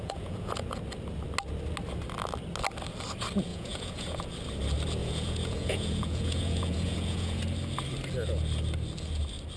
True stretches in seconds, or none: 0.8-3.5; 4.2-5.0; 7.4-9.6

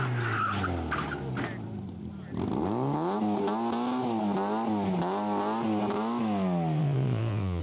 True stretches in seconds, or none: 0.0-6.8

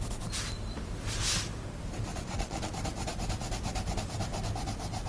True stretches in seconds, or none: 0.0-2.1; 2.7-5.1

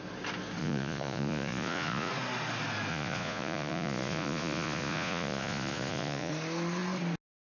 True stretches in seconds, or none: 0.0-0.6; 2.1-2.9; 6.3-7.5

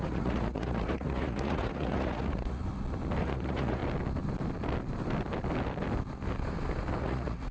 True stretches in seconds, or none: 2.6-3.2; 3.8-7.0

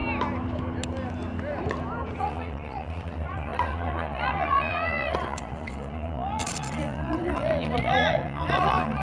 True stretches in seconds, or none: 0.0-2.2

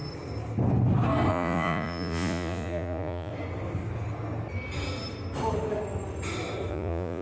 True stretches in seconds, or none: 0.0-1.3; 3.3-6.7